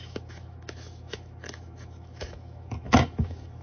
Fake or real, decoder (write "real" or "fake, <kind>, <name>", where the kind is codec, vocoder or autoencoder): fake, autoencoder, DAC-VAE